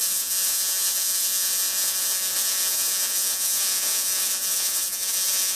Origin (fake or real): fake